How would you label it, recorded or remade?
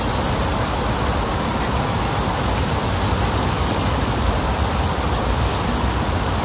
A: recorded